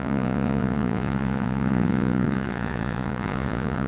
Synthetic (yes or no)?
yes